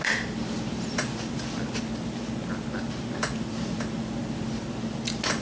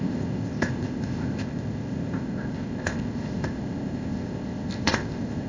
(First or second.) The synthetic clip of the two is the second